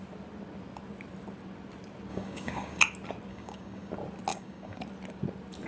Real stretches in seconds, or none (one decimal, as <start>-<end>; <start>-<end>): 0.0-2.1; 2.8-3.3; 3.9-4.3; 4.8-5.7